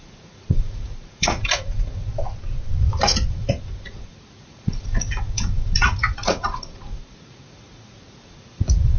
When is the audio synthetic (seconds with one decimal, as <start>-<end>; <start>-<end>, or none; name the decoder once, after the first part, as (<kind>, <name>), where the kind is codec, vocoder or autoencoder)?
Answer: 0.0-2.1 (vocoder, Vocos); 3.3-9.0